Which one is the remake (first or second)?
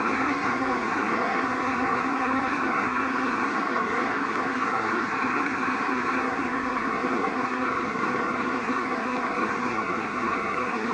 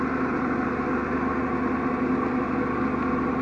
first